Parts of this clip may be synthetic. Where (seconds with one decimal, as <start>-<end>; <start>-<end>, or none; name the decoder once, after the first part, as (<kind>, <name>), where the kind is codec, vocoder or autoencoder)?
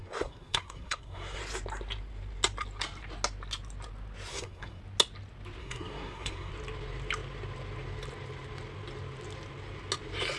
0.0-1.4 (codec, SNAC); 4.3-4.8; 5.6-6.5